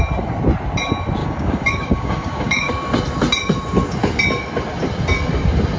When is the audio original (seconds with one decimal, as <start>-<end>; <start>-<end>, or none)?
0.0-1.2; 2.7-5.8